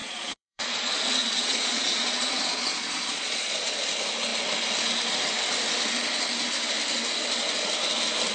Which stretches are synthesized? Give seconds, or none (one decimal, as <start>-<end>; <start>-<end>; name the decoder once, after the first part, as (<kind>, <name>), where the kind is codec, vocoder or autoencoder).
0.0-3.8 (vocoder, Vocos)